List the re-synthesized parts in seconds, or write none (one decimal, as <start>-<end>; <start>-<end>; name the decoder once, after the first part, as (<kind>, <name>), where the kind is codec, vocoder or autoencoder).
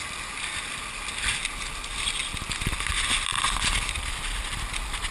2.9-4.4 (vocoder, BigVGAN v2)